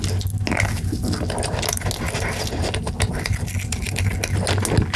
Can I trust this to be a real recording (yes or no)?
yes